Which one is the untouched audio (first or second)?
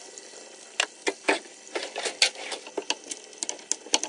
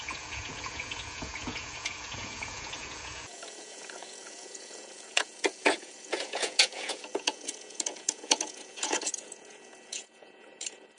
first